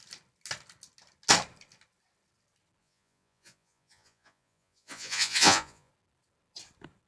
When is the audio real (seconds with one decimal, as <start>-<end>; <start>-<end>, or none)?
0.0-2.8; 5.9-7.1